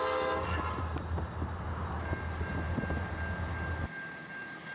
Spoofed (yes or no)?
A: no